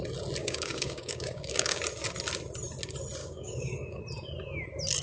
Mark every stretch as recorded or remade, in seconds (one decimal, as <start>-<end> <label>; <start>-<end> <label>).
0.0-0.4 recorded; 0.4-1.8 remade; 1.8-3.2 recorded; 3.2-4.0 remade; 4.0-5.0 recorded